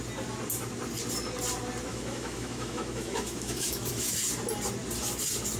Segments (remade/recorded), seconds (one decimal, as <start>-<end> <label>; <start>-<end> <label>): 0.0-1.9 recorded; 1.9-4.2 remade; 4.2-5.6 recorded